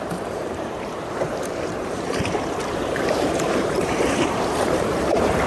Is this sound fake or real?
fake